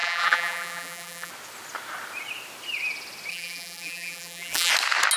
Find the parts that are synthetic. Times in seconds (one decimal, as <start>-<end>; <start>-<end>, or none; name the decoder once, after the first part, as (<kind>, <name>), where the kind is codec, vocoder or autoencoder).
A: 0.0-1.3 (vocoder, BigVGAN v2); 3.3-4.7